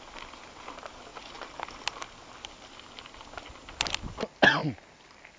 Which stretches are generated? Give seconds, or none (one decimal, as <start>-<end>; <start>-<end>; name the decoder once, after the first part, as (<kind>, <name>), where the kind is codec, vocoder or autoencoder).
none